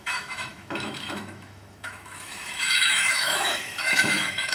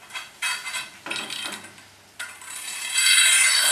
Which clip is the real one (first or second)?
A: second